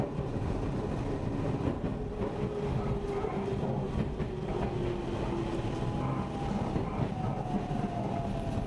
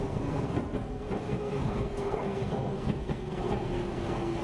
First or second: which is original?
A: first